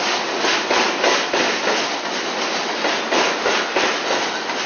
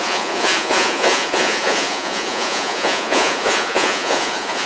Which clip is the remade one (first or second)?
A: second